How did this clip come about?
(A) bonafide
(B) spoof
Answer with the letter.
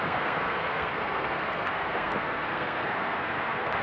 B